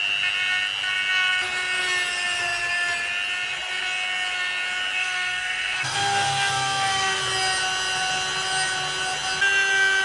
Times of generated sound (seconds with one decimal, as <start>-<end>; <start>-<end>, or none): 5.0-7.2